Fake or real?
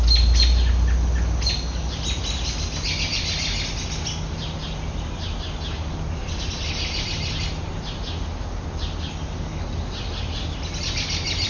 real